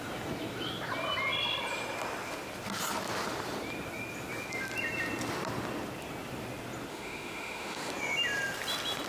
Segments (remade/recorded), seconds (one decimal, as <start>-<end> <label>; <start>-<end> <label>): 0.0-6.9 recorded; 6.9-7.9 remade; 7.9-9.1 recorded